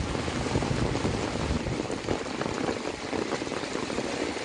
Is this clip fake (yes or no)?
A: no